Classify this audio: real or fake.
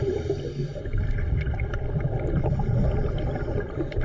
real